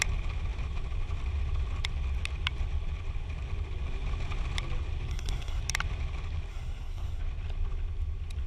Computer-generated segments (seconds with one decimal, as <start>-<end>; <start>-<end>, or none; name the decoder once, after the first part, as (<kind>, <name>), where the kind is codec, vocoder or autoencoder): 5.1-5.6 (codec, SNAC); 6.5-7.2